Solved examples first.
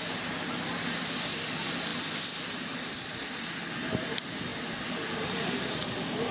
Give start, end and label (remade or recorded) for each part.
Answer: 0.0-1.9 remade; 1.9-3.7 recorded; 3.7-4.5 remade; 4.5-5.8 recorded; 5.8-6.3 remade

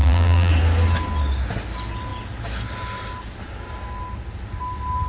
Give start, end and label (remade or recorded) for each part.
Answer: 0.0-0.5 remade; 0.5-5.1 recorded

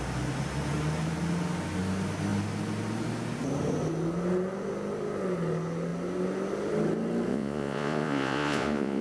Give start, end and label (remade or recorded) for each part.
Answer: 0.0-7.3 recorded; 7.3-9.0 remade

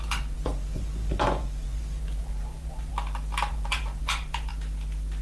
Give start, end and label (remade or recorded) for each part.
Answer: 0.0-2.9 remade; 2.9-3.5 recorded; 3.5-4.5 remade; 4.5-5.2 recorded

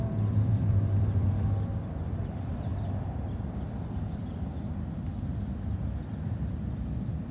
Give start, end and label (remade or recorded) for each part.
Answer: 0.0-5.1 remade; 5.1-6.1 recorded; 6.1-7.3 remade

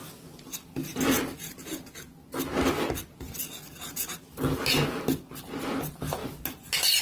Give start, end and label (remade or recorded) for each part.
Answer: 0.0-7.0 recorded